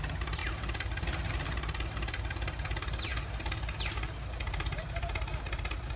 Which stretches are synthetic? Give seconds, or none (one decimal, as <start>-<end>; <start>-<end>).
none